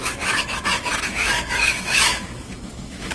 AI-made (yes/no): yes